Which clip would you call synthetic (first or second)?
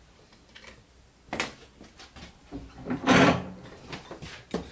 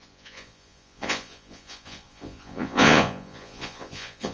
second